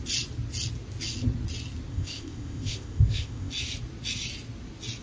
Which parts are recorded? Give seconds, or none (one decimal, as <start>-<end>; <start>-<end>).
0.0-1.9; 3.5-5.0